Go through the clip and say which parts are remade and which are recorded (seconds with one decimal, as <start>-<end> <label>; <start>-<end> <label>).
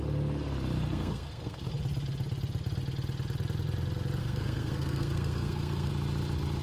0.0-0.9 recorded; 0.9-1.7 remade; 1.7-4.2 recorded; 4.2-5.9 remade; 5.9-6.6 recorded